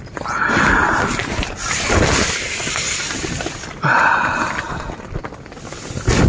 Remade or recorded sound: recorded